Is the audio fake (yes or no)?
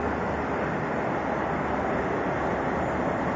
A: no